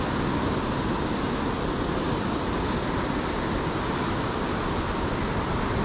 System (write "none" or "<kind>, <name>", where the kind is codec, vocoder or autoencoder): none